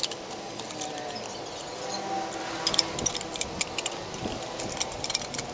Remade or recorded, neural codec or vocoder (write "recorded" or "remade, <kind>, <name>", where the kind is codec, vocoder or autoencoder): recorded